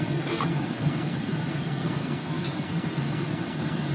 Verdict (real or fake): fake